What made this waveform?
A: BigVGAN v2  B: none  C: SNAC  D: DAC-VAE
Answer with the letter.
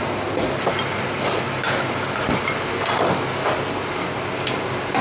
B